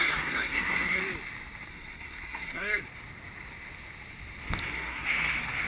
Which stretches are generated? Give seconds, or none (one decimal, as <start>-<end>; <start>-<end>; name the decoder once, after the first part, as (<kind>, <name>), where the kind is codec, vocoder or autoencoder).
0.0-1.0 (codec, SNAC); 1.7-2.8; 4.7-5.7